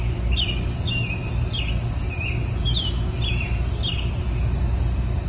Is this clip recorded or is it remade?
recorded